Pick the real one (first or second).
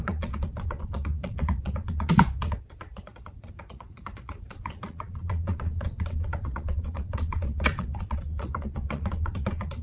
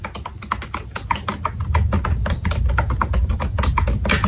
second